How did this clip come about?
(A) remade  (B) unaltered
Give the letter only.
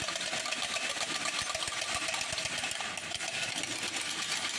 B